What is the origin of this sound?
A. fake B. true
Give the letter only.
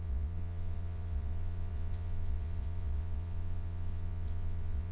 A